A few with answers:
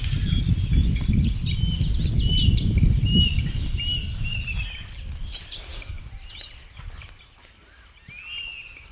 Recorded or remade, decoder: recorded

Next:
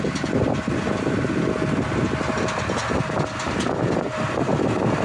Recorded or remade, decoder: recorded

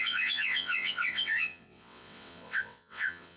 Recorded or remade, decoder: remade, vocoder, WaveNeXt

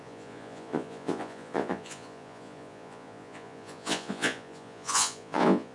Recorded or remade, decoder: remade, vocoder, Vocos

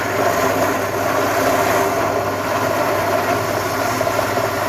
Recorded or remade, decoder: recorded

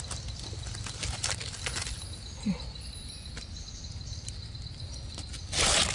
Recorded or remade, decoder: recorded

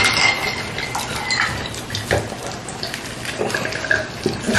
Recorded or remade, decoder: recorded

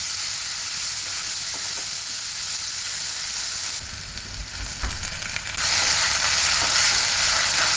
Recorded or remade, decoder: recorded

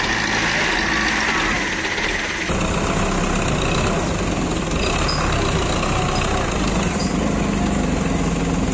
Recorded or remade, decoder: recorded